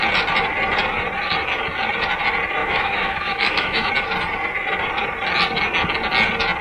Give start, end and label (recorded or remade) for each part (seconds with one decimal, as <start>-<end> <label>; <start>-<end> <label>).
0.0-2.6 recorded; 2.6-3.9 remade; 3.9-6.6 recorded